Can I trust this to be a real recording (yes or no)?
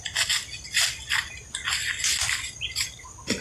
yes